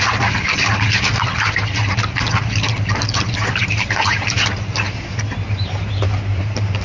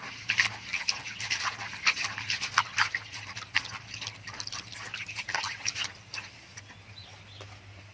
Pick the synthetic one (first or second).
first